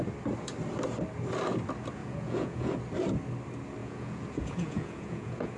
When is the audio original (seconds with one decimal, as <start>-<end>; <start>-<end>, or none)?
0.0-2.0; 2.7-3.8